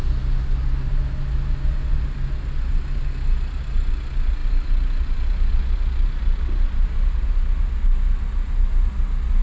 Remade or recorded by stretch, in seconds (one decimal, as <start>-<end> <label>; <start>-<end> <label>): 0.0-9.4 recorded